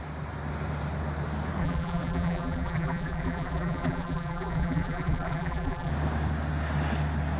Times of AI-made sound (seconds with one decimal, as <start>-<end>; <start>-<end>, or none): 1.6-5.9